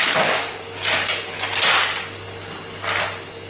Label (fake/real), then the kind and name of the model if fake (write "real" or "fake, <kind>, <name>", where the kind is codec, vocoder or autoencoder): real